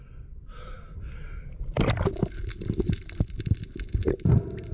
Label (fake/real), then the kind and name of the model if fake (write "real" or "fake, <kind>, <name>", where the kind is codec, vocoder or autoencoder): real